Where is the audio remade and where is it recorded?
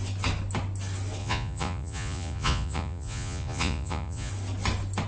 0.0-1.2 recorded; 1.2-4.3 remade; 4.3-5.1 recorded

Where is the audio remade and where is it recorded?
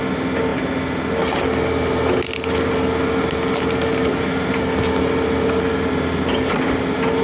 0.0-7.2 recorded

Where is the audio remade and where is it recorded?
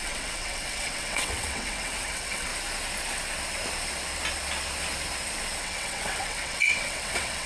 0.0-2.5 remade; 2.5-5.6 recorded; 5.6-7.5 remade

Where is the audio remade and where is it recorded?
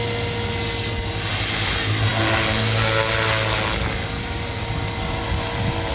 0.0-5.9 recorded